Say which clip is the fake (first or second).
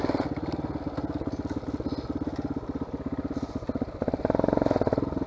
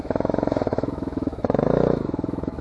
second